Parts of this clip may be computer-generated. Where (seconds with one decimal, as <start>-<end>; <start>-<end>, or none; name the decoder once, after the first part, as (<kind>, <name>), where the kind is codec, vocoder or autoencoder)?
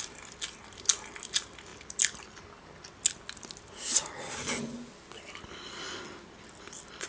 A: none